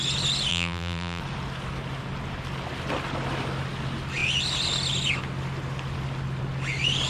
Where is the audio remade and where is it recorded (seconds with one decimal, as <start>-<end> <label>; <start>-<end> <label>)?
0.0-0.5 recorded; 0.5-1.2 remade; 1.2-7.1 recorded